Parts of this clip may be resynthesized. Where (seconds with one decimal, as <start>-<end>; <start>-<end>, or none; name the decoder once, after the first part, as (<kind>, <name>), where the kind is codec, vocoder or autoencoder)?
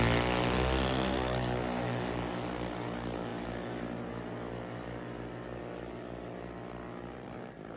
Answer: none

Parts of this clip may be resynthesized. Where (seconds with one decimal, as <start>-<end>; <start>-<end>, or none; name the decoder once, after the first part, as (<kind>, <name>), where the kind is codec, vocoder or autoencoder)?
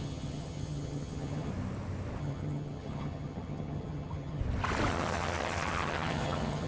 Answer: 0.0-1.5 (vocoder, HiFi-GAN); 2.2-4.4; 4.9-6.7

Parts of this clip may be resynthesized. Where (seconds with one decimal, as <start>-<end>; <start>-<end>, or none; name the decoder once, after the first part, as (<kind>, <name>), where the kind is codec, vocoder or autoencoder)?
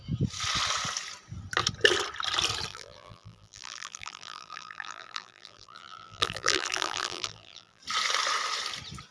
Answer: 2.7-7.8 (vocoder, BigVGAN v2)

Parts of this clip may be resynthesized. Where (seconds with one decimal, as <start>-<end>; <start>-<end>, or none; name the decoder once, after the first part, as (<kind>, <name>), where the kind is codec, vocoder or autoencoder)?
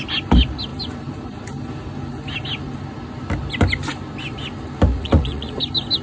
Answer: 4.9-5.6 (vocoder, Vocos)